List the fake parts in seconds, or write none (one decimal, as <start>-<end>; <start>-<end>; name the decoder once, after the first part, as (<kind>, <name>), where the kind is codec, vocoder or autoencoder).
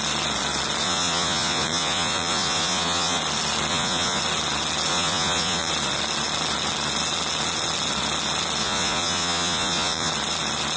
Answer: 0.8-3.2 (vocoder, Vocos); 3.7-4.2; 4.9-5.7; 8.6-10.1